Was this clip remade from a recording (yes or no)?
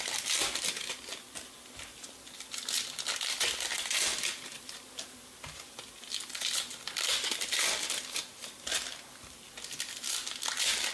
no